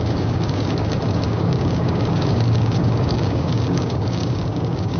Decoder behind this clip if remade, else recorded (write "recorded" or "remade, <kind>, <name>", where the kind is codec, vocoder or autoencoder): remade, codec, DAC